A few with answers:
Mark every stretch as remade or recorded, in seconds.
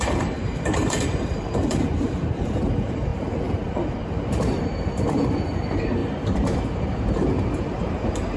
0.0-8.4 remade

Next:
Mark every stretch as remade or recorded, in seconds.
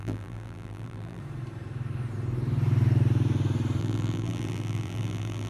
0.0-1.2 remade; 1.2-3.8 recorded; 3.8-5.5 remade